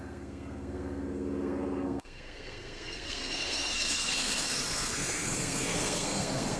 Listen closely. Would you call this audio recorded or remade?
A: remade